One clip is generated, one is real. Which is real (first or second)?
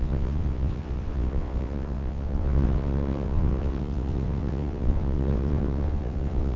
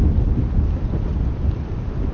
second